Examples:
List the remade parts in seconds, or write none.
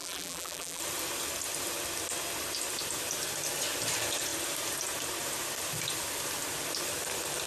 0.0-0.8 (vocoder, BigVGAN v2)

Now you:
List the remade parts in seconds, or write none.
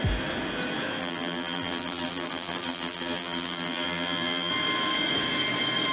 1.0-4.5 (vocoder, BigVGAN v2)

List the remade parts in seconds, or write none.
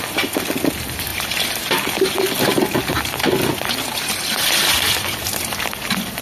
none